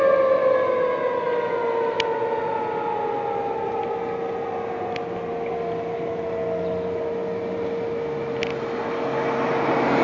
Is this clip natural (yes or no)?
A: yes